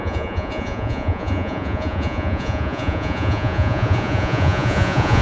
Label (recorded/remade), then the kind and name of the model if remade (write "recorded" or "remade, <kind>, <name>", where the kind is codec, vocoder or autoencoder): remade, vocoder, Vocos